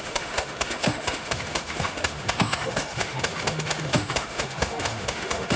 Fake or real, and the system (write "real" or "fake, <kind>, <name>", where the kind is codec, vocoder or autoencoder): fake, autoencoder, DAC-VAE